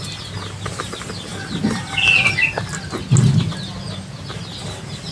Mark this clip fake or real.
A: real